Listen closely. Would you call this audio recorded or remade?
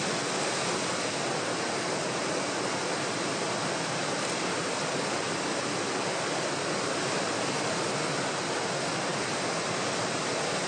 recorded